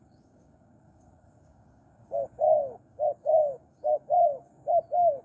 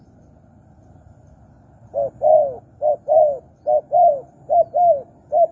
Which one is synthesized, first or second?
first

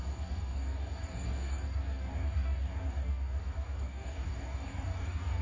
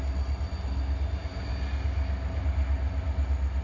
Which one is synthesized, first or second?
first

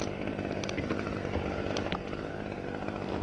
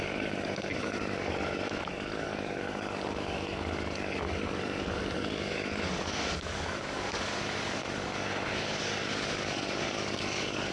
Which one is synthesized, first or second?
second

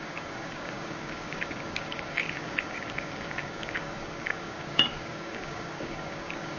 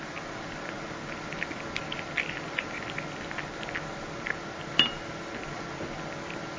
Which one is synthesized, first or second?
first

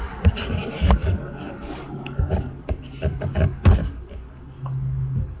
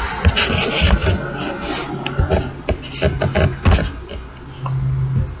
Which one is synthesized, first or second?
first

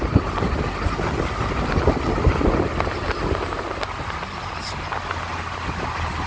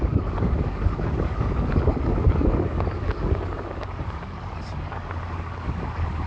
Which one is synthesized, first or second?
second